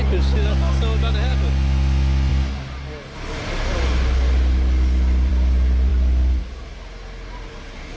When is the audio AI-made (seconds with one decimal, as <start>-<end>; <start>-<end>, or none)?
none